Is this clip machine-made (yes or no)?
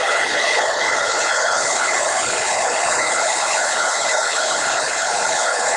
yes